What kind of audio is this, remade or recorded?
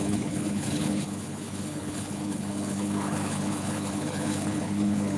remade